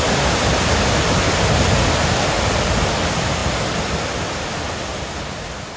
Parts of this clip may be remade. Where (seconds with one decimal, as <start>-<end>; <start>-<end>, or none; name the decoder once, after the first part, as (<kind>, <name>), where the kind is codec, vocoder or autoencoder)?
none